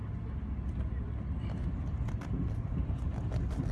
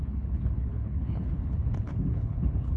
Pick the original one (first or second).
first